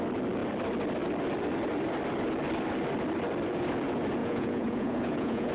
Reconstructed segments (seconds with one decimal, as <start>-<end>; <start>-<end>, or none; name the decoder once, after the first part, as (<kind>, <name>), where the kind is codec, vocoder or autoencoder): 4.2-5.5 (vocoder, Vocos)